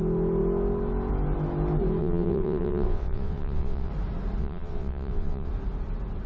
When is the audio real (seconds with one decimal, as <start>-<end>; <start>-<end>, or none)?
0.0-2.0; 3.9-4.4; 5.5-6.3